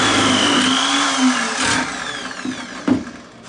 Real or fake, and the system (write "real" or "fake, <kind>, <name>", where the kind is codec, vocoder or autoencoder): real